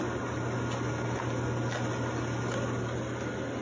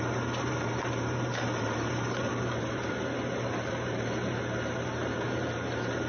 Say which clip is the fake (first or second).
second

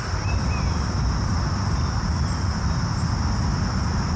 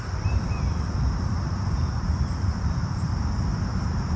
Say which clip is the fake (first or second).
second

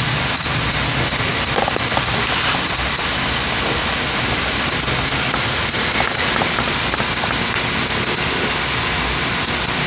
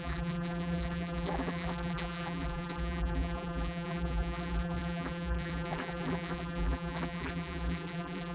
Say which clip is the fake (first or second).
second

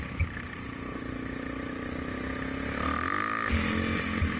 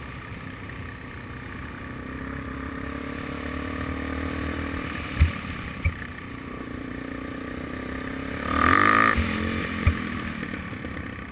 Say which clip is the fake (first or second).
second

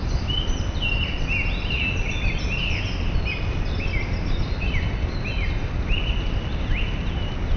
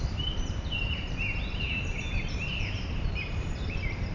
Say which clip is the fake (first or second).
second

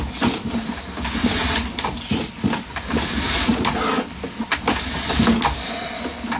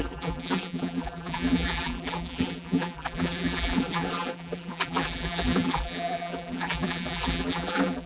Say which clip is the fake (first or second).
second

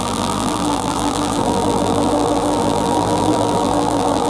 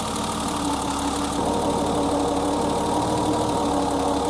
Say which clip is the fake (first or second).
first